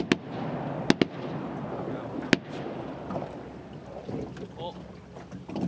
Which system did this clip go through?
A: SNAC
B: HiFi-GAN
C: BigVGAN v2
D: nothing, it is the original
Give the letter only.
D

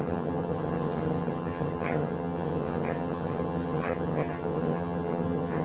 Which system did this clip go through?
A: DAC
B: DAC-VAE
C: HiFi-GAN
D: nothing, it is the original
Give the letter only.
C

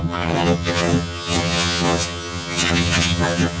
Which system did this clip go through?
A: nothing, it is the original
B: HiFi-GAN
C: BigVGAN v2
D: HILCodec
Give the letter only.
B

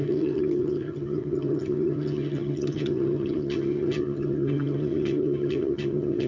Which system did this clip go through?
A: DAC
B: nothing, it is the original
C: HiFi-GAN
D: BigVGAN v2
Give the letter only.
C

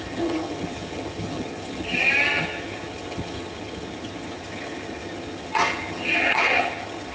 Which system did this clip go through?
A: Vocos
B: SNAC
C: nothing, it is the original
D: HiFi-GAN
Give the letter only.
D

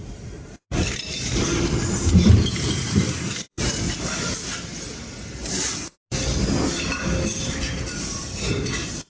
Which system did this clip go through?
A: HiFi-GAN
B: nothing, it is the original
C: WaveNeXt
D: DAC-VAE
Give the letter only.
B